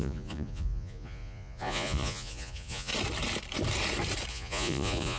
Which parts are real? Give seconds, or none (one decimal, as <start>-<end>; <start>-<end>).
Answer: 2.9-4.3